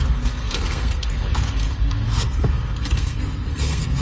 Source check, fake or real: fake